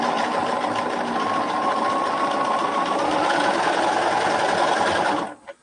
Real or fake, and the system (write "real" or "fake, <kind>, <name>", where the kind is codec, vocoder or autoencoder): real